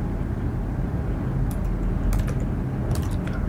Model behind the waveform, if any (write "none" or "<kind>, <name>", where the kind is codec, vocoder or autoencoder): none